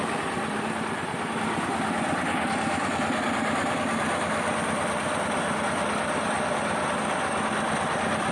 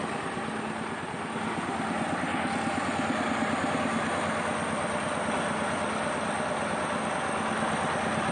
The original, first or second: second